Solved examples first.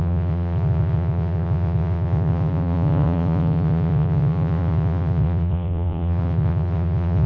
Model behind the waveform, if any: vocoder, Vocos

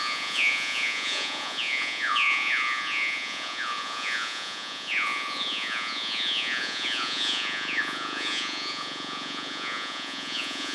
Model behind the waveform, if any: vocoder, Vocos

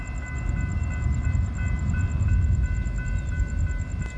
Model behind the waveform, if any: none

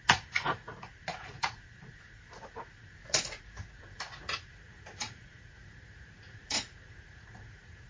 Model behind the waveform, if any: vocoder, Vocos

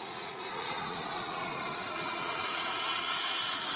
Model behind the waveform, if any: vocoder, Vocos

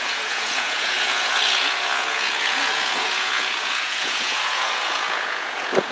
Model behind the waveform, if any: vocoder, Vocos